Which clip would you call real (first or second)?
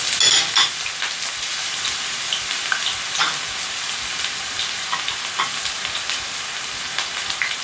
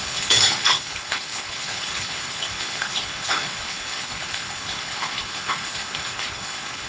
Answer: first